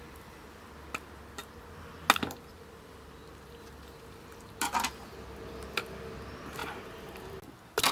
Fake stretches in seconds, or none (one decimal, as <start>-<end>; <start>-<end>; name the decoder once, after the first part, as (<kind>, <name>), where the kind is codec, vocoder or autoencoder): 6.6-7.4 (vocoder, BigVGAN v2)

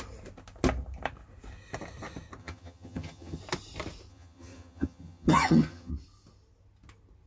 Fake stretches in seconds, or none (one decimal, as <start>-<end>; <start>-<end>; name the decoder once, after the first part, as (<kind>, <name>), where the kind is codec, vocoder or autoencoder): 2.4-3.4 (vocoder, HiFi-GAN); 4.1-5.9

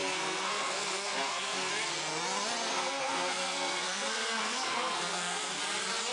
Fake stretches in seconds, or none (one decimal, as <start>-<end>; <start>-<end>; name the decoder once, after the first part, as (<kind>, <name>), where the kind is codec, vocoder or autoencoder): 0.0-1.7 (codec, SNAC); 2.7-5.6